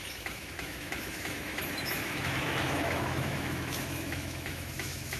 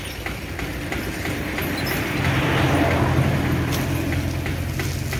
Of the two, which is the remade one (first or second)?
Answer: first